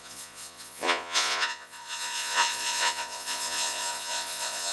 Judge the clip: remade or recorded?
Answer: remade